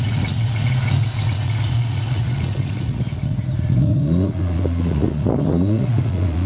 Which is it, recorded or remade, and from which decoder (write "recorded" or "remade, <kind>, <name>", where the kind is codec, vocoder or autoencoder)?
remade, vocoder, Vocos